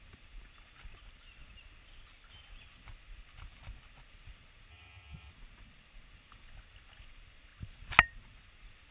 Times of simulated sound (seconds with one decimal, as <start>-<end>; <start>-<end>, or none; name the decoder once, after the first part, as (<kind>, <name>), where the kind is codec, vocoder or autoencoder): 4.7-5.3 (vocoder, HiFi-GAN)